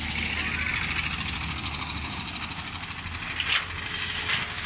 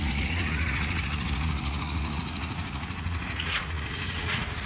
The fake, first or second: second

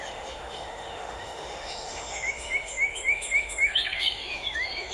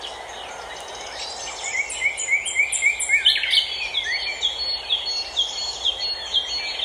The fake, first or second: first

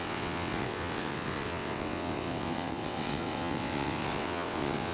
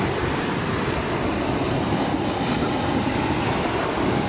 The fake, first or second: first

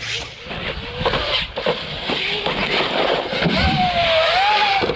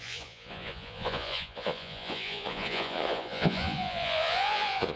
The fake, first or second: second